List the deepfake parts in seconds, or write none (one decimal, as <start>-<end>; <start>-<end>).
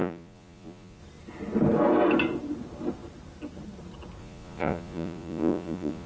0.0-1.0; 4.2-6.1